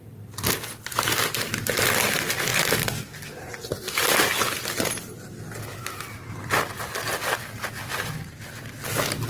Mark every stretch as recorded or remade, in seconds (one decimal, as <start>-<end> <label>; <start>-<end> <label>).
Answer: 0.0-9.3 recorded